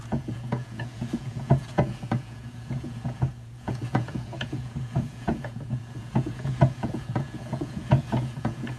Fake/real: fake